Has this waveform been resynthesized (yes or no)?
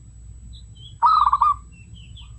no